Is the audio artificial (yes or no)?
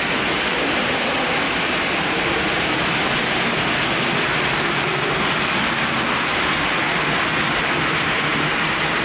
no